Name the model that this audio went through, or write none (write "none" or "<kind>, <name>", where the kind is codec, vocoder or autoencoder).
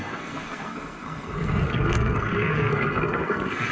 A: codec, SNAC